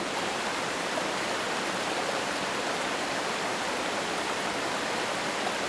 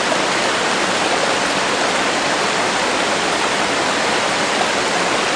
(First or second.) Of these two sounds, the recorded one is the second